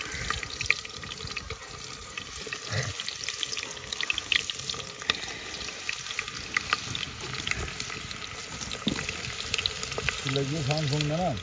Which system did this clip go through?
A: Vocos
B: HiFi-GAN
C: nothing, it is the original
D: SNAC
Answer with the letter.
C